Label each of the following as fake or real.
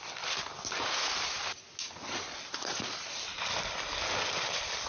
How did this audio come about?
real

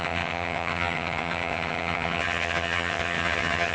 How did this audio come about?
fake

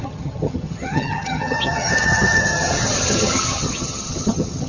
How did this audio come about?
fake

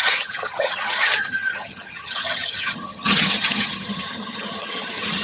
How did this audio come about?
fake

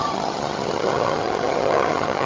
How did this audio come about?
fake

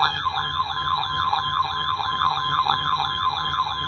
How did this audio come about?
fake